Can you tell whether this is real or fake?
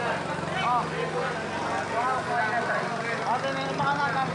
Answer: real